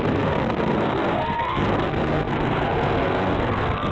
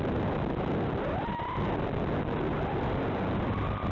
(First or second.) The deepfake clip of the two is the first